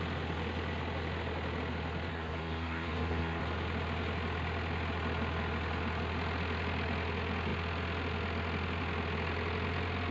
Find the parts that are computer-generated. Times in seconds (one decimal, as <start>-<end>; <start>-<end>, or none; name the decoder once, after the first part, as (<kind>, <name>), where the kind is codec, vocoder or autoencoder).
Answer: 2.1-3.4 (codec, SNAC)